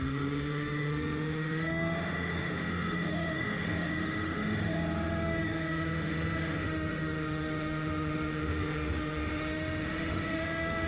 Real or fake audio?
fake